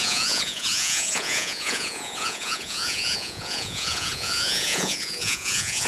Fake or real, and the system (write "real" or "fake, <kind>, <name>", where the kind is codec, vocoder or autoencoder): fake, vocoder, Vocos